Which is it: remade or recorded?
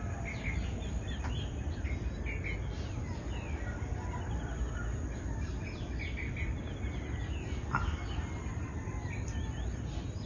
recorded